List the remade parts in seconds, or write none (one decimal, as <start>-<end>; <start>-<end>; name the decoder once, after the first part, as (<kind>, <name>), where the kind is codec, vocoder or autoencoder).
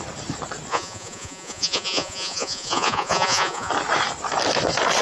0.7-3.7 (vocoder, Vocos)